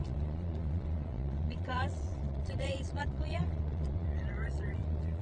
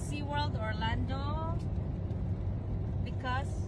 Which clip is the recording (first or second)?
second